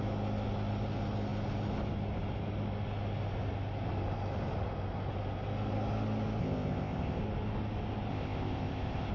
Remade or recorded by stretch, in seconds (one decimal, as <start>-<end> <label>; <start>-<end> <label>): 0.0-6.4 recorded; 6.4-7.2 remade; 7.2-8.1 recorded; 8.1-9.1 remade